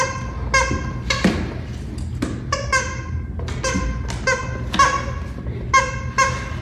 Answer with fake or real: real